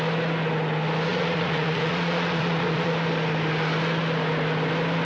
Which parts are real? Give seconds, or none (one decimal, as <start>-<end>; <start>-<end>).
0.0-1.1; 2.9-5.0